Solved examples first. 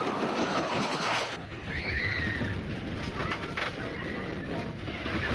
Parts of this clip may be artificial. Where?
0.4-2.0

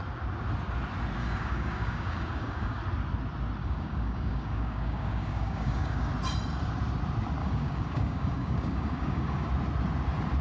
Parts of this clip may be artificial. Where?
1.2-2.8; 3.6-6.1; 7.4-9.5

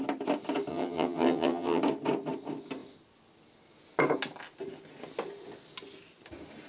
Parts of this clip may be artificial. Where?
0.7-1.8

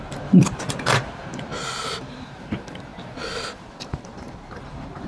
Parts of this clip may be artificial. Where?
0.0-1.5; 2.0-5.1

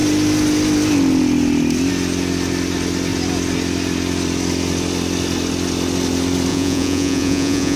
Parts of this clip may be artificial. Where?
6.5-7.8

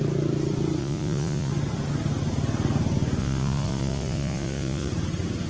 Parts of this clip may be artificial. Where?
0.8-1.5; 3.2-4.9

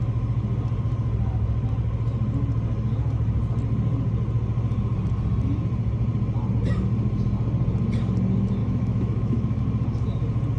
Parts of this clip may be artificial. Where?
8.6-9.6